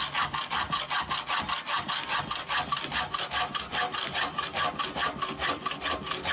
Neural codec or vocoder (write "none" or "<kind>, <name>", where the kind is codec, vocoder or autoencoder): none